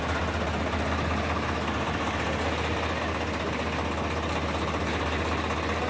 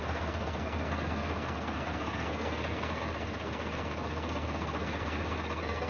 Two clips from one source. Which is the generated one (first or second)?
second